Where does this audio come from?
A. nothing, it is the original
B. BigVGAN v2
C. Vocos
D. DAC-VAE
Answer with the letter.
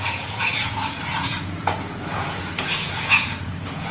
C